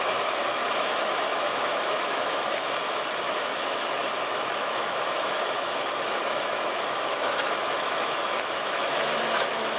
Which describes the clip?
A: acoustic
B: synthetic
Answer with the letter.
B